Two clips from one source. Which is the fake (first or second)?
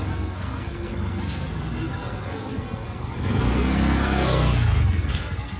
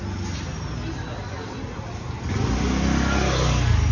first